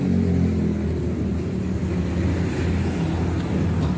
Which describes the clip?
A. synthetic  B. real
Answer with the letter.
B